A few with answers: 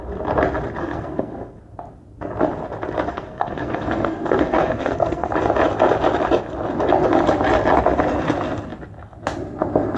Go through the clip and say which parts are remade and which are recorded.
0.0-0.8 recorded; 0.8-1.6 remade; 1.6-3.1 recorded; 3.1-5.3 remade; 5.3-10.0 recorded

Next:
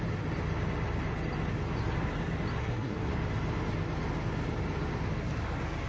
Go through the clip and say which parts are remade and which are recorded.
0.0-2.6 recorded; 2.6-3.1 remade; 3.1-5.9 recorded

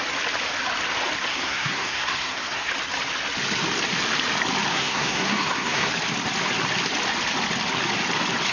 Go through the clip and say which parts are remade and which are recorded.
0.0-1.3 recorded; 1.3-2.7 remade; 2.7-4.7 recorded; 4.7-5.9 remade; 5.9-8.5 recorded